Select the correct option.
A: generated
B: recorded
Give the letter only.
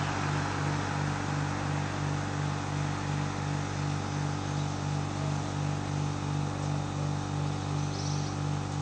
B